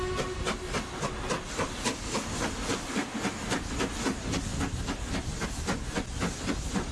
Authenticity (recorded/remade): recorded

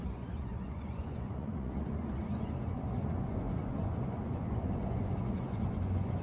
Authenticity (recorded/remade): remade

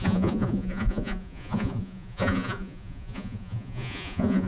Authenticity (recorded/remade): remade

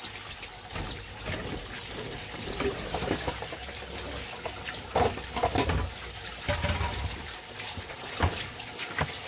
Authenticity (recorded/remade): recorded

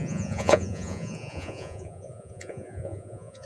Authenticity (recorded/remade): remade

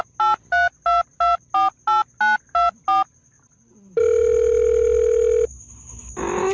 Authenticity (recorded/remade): recorded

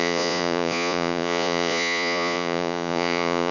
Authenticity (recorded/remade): remade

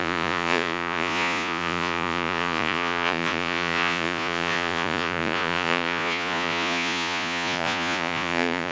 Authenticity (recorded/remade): remade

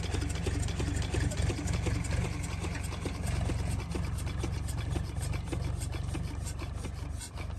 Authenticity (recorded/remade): recorded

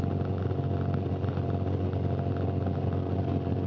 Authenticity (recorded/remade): recorded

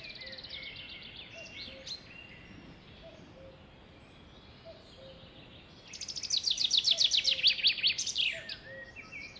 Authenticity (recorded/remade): recorded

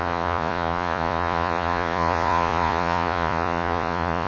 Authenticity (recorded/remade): remade